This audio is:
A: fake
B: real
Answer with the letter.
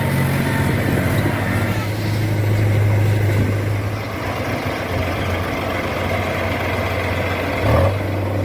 B